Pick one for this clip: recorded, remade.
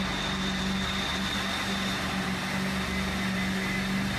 recorded